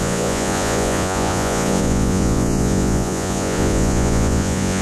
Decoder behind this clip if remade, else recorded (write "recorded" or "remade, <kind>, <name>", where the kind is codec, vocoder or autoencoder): remade, vocoder, Vocos